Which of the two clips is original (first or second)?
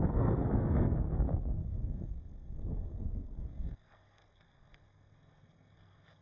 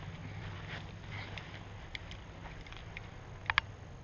second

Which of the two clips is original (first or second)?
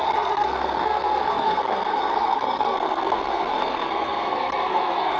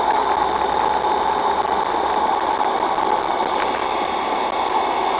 second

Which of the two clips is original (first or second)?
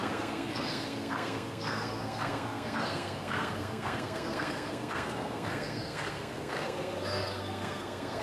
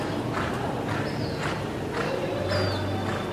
second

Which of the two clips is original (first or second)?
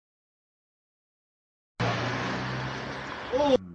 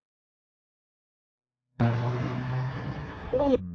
first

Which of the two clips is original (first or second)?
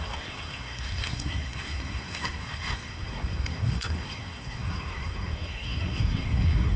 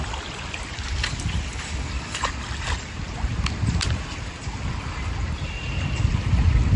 second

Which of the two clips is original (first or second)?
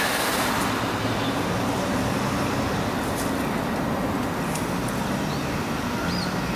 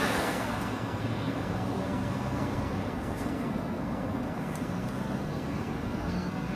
first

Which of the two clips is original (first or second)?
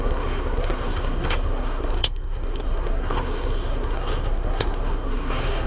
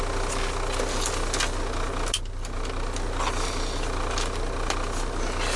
second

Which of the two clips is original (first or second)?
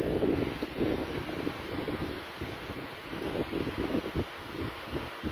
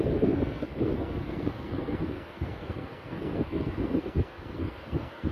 first